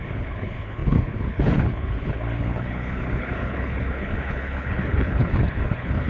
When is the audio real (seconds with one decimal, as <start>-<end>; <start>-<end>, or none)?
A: none